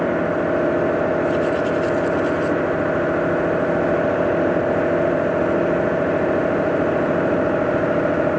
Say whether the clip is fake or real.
real